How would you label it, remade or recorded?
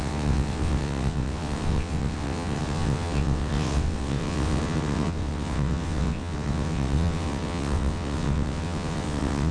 remade